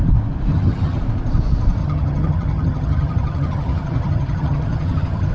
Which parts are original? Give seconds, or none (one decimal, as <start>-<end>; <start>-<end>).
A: 0.0-0.5; 1.0-1.8